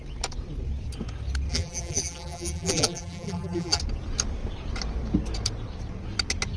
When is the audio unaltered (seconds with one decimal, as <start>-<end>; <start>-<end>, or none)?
0.0-1.5; 3.8-6.6